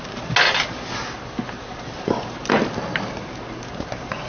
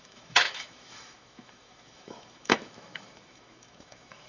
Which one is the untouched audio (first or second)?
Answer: first